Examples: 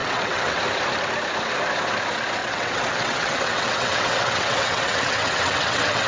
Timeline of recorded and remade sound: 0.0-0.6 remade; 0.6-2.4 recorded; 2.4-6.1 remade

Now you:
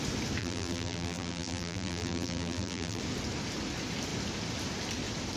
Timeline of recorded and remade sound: 0.0-0.4 recorded; 0.4-3.0 remade; 3.0-5.4 recorded

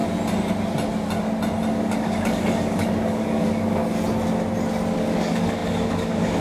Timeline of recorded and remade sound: 0.0-1.7 recorded; 1.7-3.8 remade; 3.8-4.9 recorded; 4.9-6.4 remade